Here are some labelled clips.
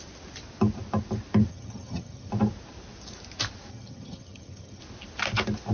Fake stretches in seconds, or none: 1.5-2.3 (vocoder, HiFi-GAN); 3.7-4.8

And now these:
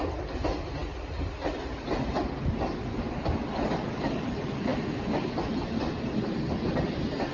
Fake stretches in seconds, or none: none

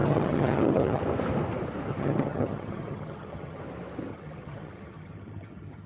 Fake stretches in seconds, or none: 0.0-1.0 (vocoder, HiFi-GAN); 1.9-3.6; 4.1-5.9

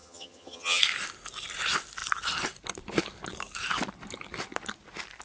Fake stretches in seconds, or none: 0.0-0.8 (vocoder, HiFi-GAN)